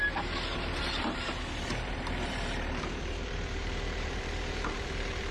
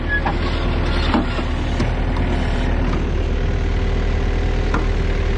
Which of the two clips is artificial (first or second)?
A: first